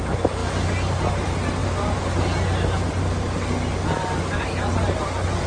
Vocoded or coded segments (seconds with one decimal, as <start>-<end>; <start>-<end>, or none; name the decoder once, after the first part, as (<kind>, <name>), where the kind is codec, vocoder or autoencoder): none